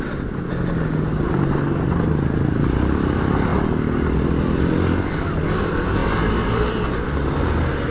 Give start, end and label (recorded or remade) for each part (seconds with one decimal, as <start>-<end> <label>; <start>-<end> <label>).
0.0-7.9 recorded